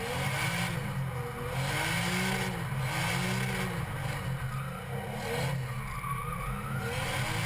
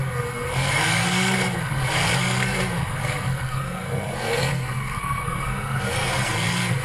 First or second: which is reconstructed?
second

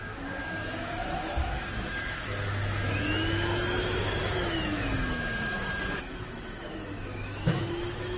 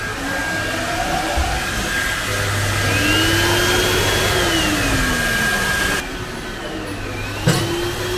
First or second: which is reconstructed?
first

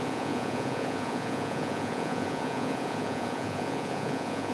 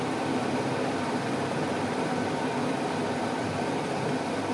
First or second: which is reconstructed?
first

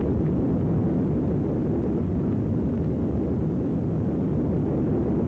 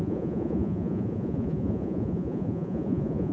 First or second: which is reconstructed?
second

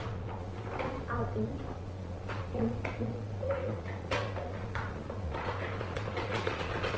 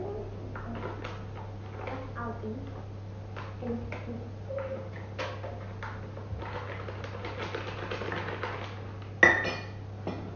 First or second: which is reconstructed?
first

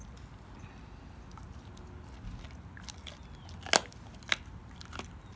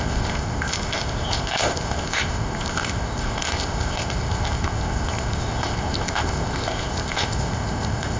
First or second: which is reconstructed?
second